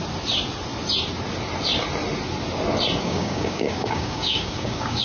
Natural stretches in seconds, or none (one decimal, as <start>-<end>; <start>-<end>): 0.0-3.0